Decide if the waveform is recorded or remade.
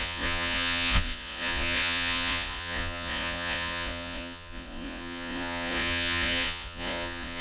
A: remade